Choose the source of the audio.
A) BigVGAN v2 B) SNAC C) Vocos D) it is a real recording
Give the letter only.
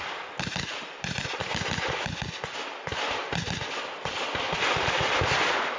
D